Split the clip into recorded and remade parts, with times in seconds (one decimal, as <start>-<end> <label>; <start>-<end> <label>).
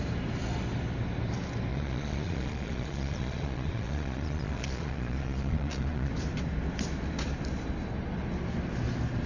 0.0-1.7 recorded; 1.7-6.1 remade; 6.1-9.3 recorded